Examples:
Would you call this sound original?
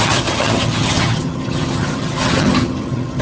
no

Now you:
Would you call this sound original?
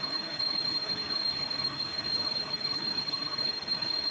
no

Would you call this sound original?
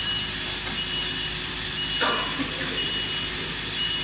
yes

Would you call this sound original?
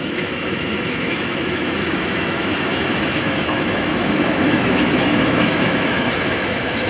no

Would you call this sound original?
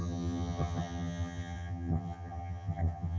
no